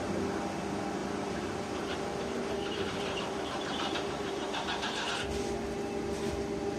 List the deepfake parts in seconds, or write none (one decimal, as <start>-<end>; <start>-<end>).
1.0-5.1